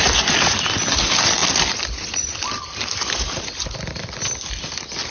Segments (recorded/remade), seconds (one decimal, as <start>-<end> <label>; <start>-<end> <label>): 0.0-1.4 recorded; 1.4-4.5 remade; 4.5-5.1 recorded